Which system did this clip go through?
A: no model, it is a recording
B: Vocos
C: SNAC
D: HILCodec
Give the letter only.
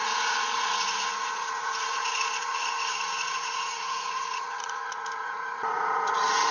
B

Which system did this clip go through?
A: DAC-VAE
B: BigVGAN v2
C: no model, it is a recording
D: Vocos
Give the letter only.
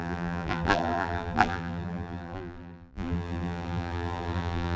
B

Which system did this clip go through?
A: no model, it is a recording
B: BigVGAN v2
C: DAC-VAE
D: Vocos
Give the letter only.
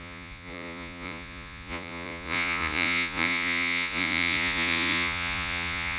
D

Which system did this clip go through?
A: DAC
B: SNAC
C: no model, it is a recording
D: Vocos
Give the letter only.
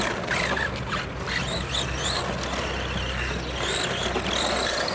C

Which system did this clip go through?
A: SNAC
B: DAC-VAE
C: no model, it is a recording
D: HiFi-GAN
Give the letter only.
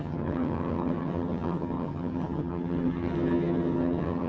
D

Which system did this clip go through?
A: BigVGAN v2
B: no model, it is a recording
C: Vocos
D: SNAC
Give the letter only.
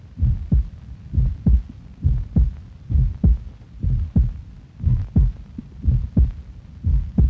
B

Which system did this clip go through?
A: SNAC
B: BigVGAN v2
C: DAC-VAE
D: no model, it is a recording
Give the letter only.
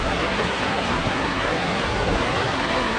A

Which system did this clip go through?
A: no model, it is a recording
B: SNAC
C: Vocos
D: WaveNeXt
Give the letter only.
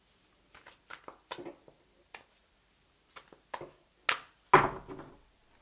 A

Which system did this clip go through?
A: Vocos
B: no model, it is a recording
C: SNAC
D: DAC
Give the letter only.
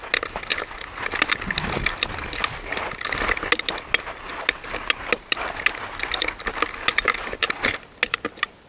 B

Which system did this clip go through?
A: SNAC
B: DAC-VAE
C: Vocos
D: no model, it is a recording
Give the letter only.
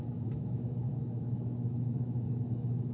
B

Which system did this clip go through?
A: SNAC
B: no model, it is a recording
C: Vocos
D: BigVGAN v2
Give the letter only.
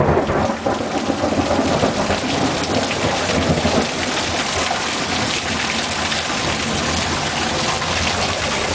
B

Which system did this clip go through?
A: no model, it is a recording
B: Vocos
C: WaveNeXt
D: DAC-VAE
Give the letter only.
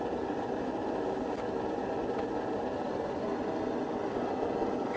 A